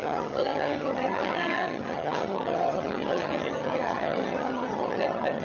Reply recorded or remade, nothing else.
remade